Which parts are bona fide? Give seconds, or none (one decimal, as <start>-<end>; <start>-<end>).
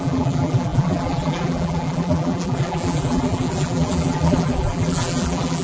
none